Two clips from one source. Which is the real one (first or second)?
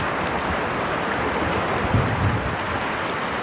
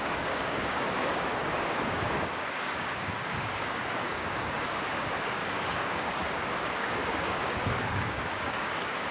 first